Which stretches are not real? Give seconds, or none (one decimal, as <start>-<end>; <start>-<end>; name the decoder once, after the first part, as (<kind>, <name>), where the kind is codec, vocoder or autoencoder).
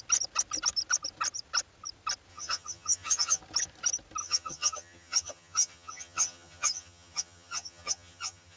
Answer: 2.3-3.4 (vocoder, HiFi-GAN); 4.2-8.6